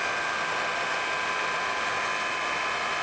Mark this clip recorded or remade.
recorded